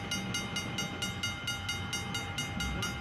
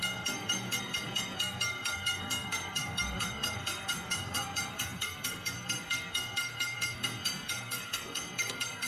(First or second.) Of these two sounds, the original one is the first